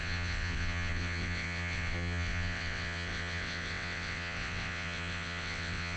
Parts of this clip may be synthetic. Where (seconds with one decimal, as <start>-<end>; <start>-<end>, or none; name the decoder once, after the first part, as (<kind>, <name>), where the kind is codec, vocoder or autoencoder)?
0.0-6.0 (vocoder, WaveNeXt)